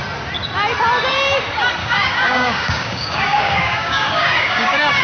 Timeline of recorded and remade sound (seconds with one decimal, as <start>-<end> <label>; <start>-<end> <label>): 0.0-1.8 recorded; 1.8-5.0 remade